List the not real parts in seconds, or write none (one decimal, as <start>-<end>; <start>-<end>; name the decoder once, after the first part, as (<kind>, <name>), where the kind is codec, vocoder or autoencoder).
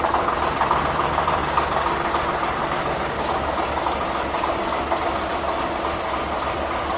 0.0-7.0 (vocoder, BigVGAN v2)